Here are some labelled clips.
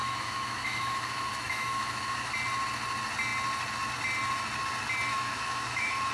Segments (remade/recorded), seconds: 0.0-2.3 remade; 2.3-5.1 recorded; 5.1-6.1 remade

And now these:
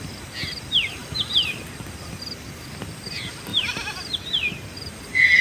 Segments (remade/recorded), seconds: 0.0-5.4 recorded

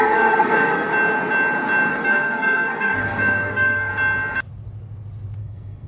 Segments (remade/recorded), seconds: 0.0-0.9 remade; 0.9-1.9 recorded; 1.9-3.9 remade; 3.9-5.4 recorded; 5.4-5.9 remade